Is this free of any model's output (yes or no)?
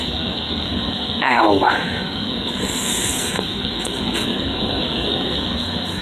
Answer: no